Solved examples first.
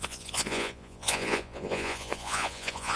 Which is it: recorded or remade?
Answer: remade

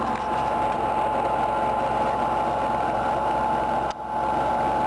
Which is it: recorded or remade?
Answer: recorded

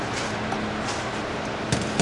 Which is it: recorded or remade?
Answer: recorded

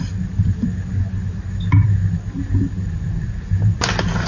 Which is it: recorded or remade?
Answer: recorded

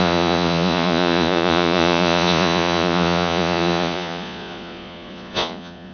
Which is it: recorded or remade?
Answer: remade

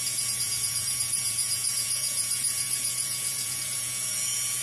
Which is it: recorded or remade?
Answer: remade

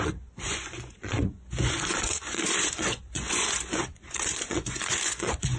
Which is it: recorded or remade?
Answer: remade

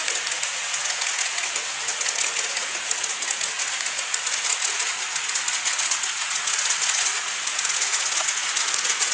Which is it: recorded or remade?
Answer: remade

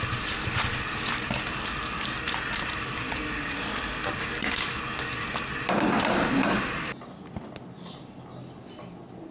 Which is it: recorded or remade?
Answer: recorded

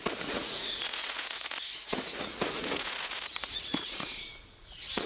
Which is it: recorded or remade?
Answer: remade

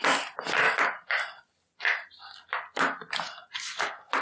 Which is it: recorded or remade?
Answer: recorded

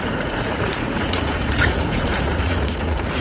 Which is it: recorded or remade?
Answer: remade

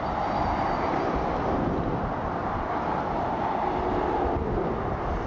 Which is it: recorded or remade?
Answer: recorded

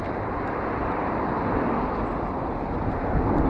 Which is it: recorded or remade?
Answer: recorded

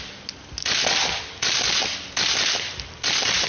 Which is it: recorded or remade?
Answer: recorded